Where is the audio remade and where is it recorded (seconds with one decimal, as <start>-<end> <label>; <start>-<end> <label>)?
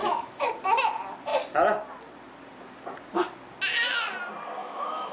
0.0-0.5 remade; 0.5-4.6 recorded; 4.6-5.1 remade